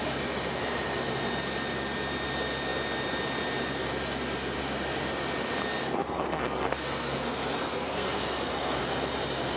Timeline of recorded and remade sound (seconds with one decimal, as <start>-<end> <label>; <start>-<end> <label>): 0.0-5.8 recorded; 5.8-8.8 remade; 8.8-9.6 recorded